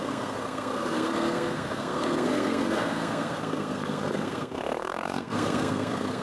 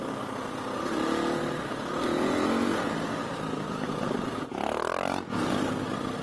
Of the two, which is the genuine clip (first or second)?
second